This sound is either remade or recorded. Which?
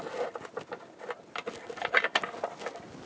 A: recorded